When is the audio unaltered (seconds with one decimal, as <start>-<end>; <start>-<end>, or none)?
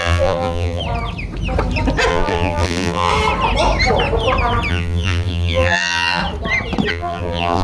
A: 0.8-2.1; 3.1-4.7; 6.2-6.9